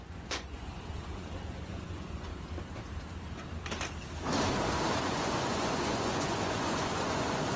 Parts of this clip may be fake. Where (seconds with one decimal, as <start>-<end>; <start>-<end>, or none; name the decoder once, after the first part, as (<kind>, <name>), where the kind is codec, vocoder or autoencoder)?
0.0-2.3 (vocoder, Vocos); 5.0-7.6